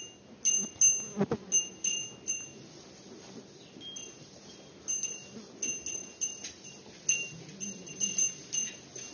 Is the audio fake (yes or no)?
no